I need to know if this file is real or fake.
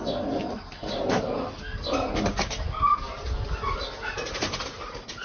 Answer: real